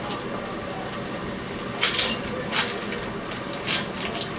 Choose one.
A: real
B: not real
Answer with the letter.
A